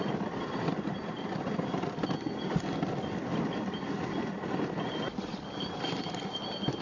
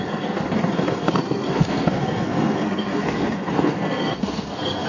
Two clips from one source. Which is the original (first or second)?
first